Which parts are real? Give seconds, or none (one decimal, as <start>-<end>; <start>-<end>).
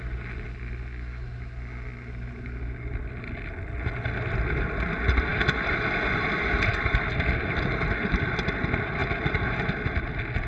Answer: 0.0-10.5